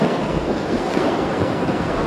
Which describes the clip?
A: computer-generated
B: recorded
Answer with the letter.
A